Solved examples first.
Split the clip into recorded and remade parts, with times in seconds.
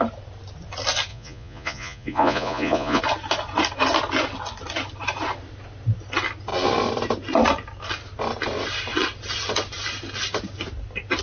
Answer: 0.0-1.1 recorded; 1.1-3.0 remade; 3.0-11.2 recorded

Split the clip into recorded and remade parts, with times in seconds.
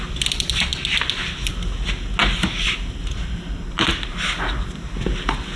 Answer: 0.0-5.6 recorded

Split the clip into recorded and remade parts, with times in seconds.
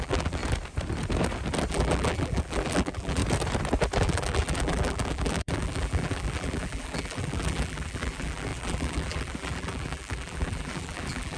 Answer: 0.0-0.4 remade; 0.4-1.7 recorded; 1.7-3.2 remade; 3.2-4.0 recorded; 4.0-11.4 remade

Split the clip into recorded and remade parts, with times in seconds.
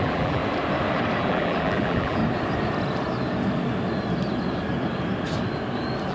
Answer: 0.0-0.4 remade; 0.4-1.2 recorded; 1.2-2.2 remade; 2.2-6.1 recorded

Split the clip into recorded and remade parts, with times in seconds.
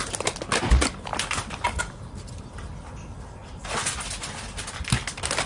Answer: 0.0-5.5 recorded